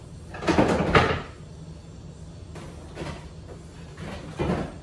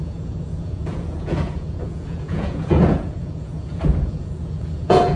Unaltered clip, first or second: first